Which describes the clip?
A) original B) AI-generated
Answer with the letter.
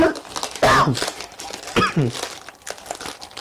A